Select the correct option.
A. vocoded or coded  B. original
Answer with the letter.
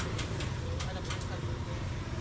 B